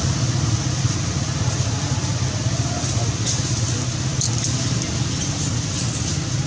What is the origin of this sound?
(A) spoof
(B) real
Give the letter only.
B